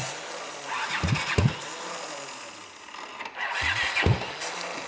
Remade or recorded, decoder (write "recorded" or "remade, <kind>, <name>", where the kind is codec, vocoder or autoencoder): recorded